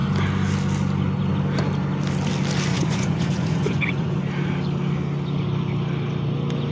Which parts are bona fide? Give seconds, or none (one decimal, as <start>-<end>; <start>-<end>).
0.0-2.7; 4.2-6.7